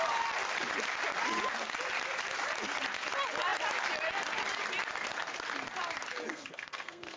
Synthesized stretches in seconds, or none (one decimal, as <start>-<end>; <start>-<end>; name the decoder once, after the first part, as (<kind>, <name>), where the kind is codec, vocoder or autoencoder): 6.3-7.2 (codec, SNAC)